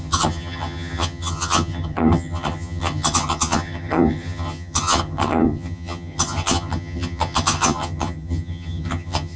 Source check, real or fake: fake